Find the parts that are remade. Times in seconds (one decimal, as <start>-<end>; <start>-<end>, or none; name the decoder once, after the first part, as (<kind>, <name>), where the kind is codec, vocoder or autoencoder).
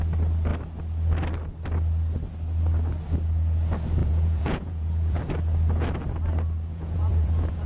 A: 4.0-5.2 (vocoder, Vocos); 6.7-7.7